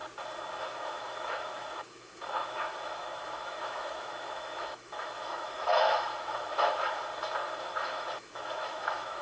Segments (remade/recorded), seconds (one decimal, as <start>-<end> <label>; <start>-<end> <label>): 0.0-0.6 recorded; 0.6-7.1 remade; 7.1-7.6 recorded; 7.6-9.2 remade